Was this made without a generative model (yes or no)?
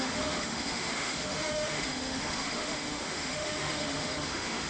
no